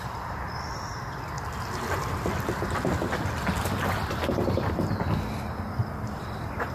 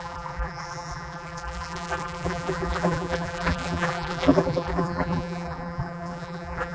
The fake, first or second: second